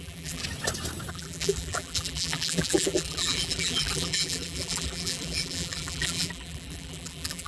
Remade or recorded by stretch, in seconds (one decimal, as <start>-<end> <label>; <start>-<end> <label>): 0.0-0.4 remade; 0.4-1.1 recorded; 1.1-7.5 remade